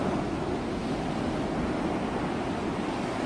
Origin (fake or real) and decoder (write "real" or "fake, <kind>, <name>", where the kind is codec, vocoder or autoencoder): real